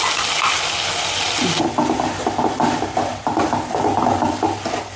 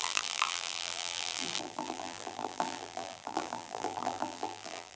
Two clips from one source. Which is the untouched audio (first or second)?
first